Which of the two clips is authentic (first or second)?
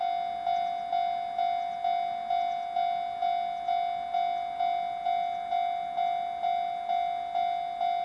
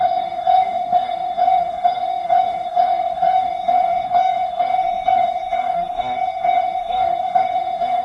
first